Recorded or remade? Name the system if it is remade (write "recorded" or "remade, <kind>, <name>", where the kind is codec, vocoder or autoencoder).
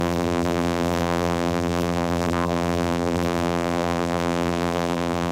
remade, vocoder, BigVGAN v2